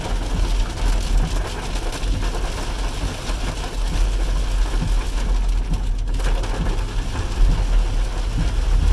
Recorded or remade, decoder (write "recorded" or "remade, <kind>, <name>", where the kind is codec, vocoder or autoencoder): recorded